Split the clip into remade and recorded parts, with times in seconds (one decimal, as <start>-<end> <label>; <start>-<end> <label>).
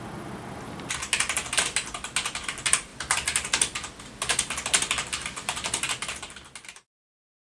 0.0-7.6 recorded